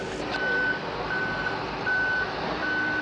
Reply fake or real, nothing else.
real